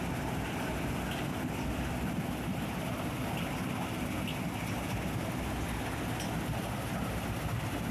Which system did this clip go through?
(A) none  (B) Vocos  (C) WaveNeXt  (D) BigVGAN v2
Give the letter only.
A